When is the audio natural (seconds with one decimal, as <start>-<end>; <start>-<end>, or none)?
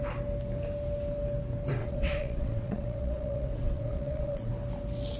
0.0-1.8; 4.5-5.2